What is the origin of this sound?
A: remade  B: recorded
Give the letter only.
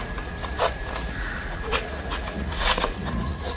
A